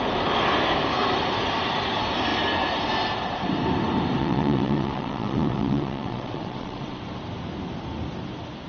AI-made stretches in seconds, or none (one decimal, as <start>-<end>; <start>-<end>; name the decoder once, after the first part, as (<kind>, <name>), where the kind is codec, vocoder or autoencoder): 4.2-7.0 (vocoder, WaveNeXt)